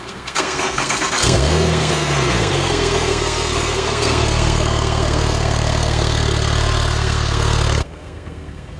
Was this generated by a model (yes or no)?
yes